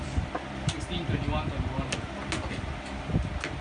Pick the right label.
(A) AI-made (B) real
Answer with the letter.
B